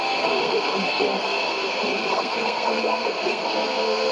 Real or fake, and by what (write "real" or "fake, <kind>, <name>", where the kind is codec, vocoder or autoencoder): fake, codec, SNAC